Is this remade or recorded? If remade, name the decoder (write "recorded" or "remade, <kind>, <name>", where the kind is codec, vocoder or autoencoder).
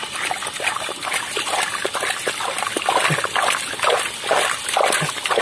recorded